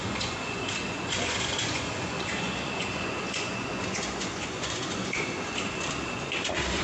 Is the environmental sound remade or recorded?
remade